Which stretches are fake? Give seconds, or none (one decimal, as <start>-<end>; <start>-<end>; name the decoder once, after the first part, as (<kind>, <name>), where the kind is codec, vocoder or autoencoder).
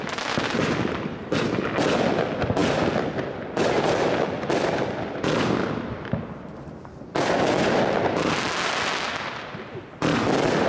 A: none